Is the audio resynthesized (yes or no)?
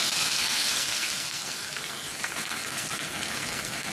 yes